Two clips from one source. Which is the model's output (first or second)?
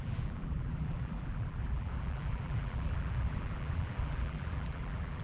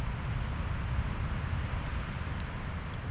first